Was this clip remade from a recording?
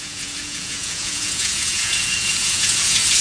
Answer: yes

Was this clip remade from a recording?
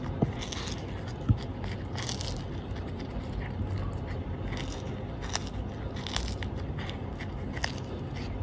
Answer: no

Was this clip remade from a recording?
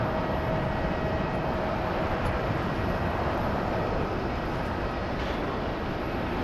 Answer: no